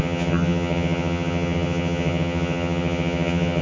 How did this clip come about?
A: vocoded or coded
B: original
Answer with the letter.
A